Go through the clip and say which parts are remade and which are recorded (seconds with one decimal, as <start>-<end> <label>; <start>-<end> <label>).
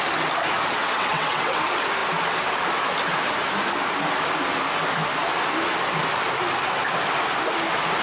0.0-0.8 recorded; 0.8-1.6 remade; 1.6-8.0 recorded